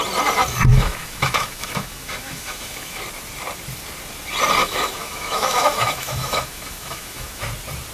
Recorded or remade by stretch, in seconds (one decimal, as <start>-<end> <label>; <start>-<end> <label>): 0.0-0.7 recorded; 0.7-3.0 remade; 3.0-4.6 recorded; 4.6-7.4 remade; 7.4-7.9 recorded